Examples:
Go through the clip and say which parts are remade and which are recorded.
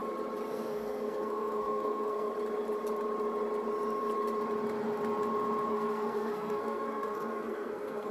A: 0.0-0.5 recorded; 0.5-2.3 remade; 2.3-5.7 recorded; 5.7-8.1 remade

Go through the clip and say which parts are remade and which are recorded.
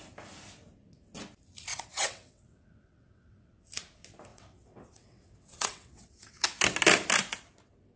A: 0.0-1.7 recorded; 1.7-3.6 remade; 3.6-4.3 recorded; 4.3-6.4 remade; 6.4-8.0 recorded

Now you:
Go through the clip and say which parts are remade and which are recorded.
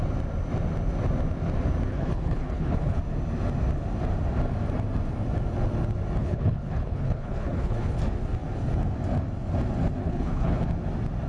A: 0.0-1.9 recorded; 1.9-3.0 remade; 3.0-6.2 recorded; 6.2-8.0 remade; 8.0-10.0 recorded; 10.0-10.6 remade; 10.6-11.3 recorded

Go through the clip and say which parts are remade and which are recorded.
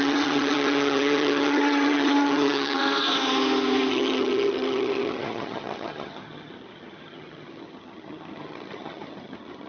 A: 0.0-2.8 remade; 2.8-3.9 recorded; 3.9-9.7 remade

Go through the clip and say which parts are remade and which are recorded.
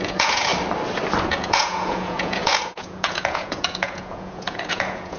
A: 0.0-0.5 remade; 0.5-1.2 recorded; 1.2-5.2 remade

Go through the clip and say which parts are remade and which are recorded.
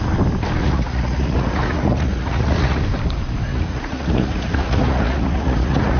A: 0.0-0.6 recorded; 0.6-2.8 remade; 2.8-3.5 recorded; 3.5-6.0 remade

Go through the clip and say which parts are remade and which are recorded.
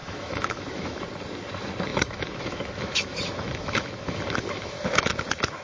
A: 0.0-1.0 remade; 1.0-1.9 recorded; 1.9-5.1 remade; 5.1-5.6 recorded